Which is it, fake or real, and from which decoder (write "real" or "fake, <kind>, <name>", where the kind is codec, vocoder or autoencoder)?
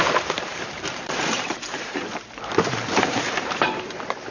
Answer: fake, vocoder, BigVGAN v2